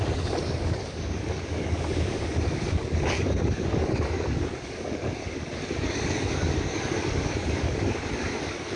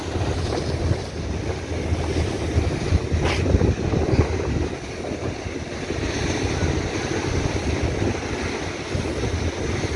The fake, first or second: first